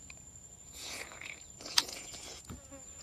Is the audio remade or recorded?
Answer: remade